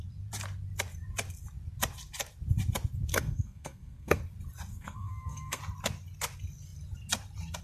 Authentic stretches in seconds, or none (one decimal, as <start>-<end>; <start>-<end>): 0.0-3.1; 4.2-4.7; 5.6-7.6